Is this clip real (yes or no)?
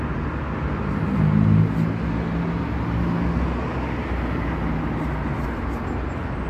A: yes